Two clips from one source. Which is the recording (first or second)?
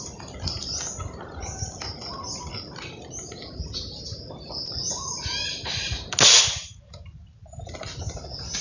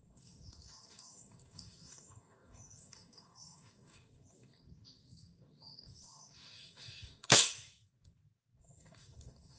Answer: first